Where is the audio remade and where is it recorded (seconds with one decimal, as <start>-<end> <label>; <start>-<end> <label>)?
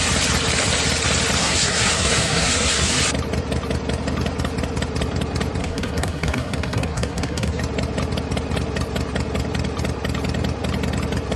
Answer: 0.0-1.4 recorded; 1.4-3.0 remade; 3.0-5.6 recorded; 5.6-7.6 remade; 7.6-11.4 recorded